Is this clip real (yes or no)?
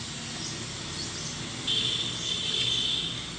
yes